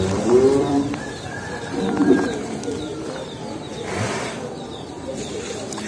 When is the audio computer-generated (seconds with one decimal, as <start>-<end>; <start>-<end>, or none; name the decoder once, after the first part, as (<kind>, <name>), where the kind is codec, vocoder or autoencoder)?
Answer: 0.0-0.7 (vocoder, BigVGAN v2); 1.3-5.9